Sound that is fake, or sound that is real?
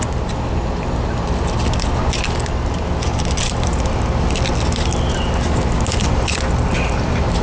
real